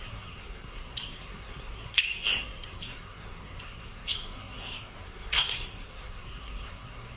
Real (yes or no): no